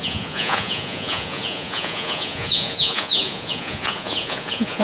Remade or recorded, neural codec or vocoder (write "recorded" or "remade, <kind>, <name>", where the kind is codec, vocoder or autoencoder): remade, vocoder, Vocos